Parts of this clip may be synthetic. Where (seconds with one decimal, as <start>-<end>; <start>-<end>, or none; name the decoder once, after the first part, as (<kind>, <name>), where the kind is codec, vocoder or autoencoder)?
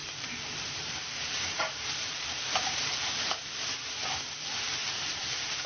0.0-3.4 (vocoder, BigVGAN v2); 4.8-5.7